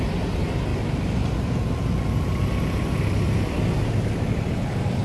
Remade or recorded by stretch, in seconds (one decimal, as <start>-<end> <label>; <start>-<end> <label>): 0.0-5.0 recorded